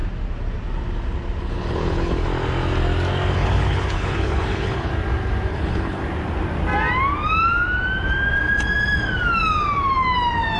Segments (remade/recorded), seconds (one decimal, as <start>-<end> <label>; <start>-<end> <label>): 0.0-1.4 recorded; 1.4-2.3 remade; 2.3-3.3 recorded; 3.3-4.9 remade; 4.9-5.5 recorded; 5.5-6.0 remade; 6.0-10.6 recorded